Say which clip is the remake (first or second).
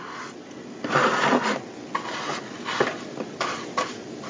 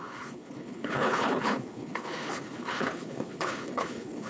second